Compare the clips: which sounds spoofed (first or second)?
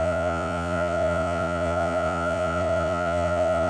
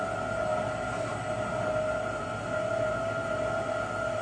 first